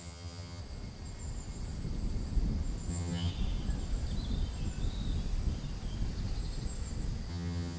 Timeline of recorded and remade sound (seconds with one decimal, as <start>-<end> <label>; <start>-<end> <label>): 0.0-0.6 remade; 0.6-2.9 recorded; 2.9-3.3 remade; 3.3-7.3 recorded; 7.3-7.8 remade